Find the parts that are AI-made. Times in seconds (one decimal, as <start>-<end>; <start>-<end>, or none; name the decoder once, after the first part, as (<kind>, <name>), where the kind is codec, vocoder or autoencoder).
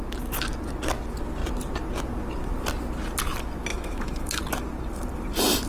3.7-4.4 (autoencoder, DAC-VAE)